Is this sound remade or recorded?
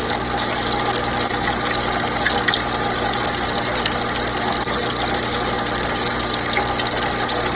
recorded